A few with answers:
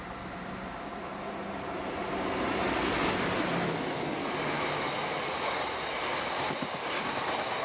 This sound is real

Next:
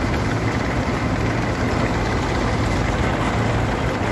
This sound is real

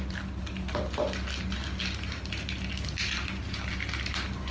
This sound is real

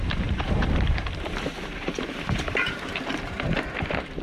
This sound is fake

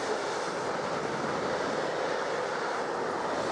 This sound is real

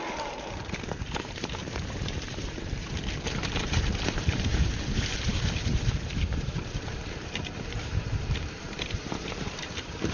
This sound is fake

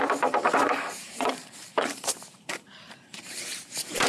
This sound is fake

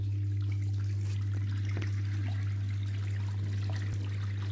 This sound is real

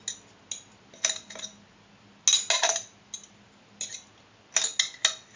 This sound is real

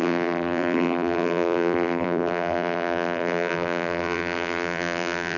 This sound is fake